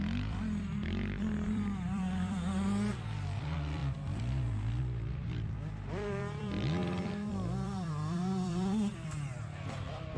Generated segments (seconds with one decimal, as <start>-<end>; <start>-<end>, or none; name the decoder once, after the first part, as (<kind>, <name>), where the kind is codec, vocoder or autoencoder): 0.0-10.2 (vocoder, BigVGAN v2)